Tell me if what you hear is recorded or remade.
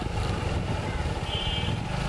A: recorded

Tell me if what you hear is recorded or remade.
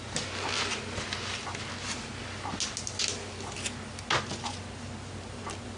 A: recorded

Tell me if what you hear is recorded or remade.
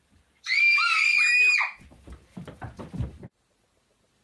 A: remade